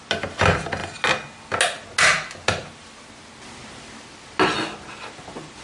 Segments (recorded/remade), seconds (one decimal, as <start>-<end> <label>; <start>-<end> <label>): 0.0-5.6 recorded